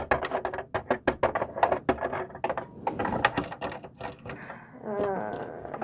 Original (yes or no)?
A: yes